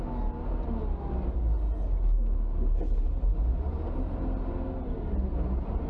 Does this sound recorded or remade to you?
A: recorded